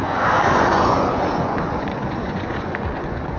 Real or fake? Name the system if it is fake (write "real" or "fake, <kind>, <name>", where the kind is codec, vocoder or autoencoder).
fake, vocoder, Vocos